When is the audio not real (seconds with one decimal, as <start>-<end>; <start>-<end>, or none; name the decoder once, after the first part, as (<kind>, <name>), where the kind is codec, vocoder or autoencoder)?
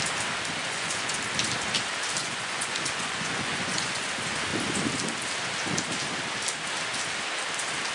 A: 0.6-1.2 (vocoder, Vocos); 2.2-4.1